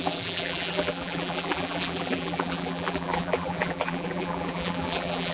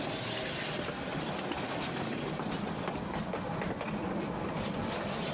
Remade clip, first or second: first